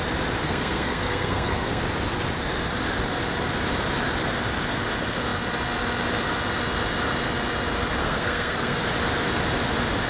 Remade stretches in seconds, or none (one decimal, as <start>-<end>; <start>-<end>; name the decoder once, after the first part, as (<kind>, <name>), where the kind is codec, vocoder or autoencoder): 0.4-1.8 (codec, SNAC); 8.0-8.8